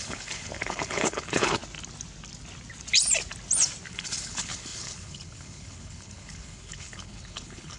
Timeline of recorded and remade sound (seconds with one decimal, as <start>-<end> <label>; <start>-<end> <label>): 0.0-1.6 remade; 1.6-3.9 recorded; 3.9-7.8 remade

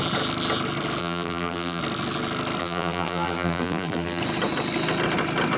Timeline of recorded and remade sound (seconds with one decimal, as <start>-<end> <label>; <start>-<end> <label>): 0.0-1.0 recorded; 1.0-1.8 remade; 1.8-2.6 recorded; 2.6-4.2 remade; 4.2-5.6 recorded

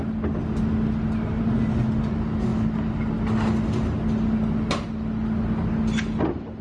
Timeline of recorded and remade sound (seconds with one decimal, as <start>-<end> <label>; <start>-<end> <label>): 0.0-6.6 recorded

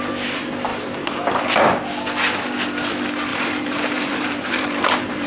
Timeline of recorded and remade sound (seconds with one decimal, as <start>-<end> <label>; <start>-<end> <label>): 0.0-3.3 recorded; 3.3-5.3 remade

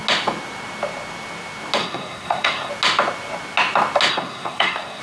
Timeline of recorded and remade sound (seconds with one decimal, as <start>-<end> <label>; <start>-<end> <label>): 0.0-1.8 recorded; 1.8-2.7 remade; 2.7-4.1 recorded; 4.1-5.0 remade

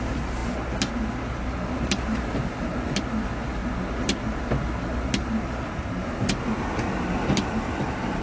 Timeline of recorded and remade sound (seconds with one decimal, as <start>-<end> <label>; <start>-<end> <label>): 0.0-8.2 recorded

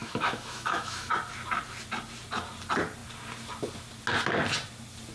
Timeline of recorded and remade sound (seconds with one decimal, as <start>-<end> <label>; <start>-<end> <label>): 0.0-1.1 remade; 1.1-5.1 recorded

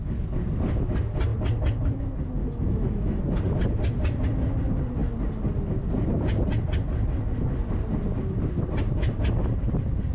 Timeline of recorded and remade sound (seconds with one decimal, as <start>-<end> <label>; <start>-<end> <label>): 0.0-2.4 recorded; 2.4-3.2 remade; 3.2-10.1 recorded